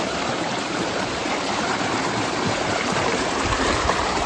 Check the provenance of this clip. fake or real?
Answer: fake